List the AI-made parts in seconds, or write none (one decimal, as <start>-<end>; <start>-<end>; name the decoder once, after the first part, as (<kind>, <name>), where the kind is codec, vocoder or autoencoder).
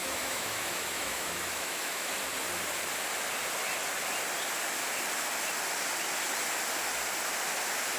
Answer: 0.0-2.1 (autoencoder, DAC-VAE)